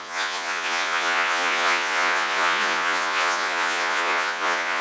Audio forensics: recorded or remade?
remade